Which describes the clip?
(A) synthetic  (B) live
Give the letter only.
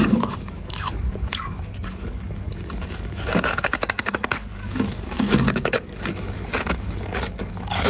A